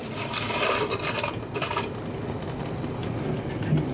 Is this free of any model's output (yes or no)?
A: yes